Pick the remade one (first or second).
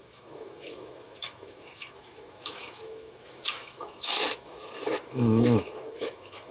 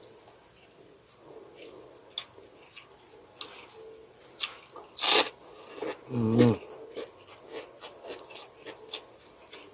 first